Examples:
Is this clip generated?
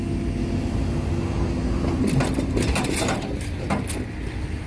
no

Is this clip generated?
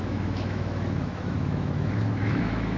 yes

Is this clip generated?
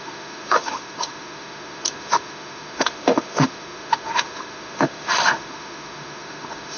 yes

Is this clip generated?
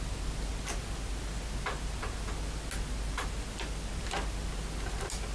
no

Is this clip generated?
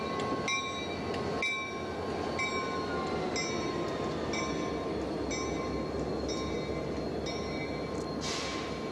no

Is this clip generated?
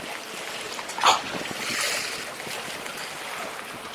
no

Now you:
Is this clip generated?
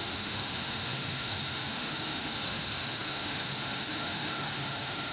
yes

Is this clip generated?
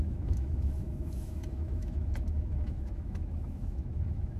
yes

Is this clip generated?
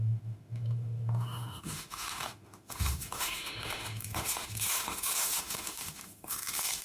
yes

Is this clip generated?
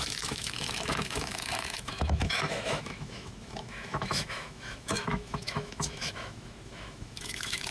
yes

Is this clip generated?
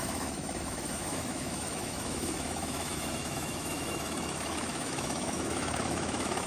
yes